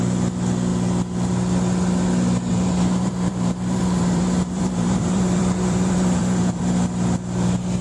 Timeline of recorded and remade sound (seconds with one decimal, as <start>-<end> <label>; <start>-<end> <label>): 0.0-2.5 recorded; 2.5-6.6 remade; 6.6-7.8 recorded